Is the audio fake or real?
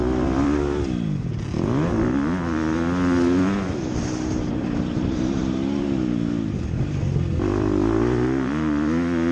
real